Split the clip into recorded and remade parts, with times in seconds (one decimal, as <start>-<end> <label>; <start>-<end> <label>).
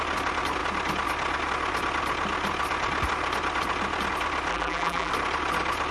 0.0-4.5 recorded; 4.5-5.1 remade; 5.1-5.9 recorded